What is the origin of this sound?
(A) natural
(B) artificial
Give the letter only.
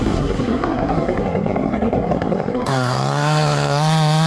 B